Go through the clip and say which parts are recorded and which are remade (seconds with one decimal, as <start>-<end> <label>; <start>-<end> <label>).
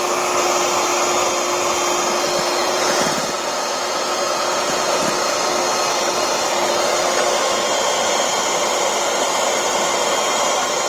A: 0.0-2.6 recorded; 2.6-5.0 remade; 5.0-10.9 recorded